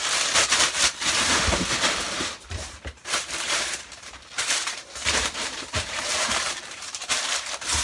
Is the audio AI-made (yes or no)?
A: yes